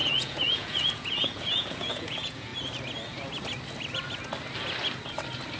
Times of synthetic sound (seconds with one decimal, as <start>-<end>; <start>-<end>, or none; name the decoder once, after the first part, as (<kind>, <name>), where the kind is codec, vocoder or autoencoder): 0.0-2.5 (vocoder, Vocos)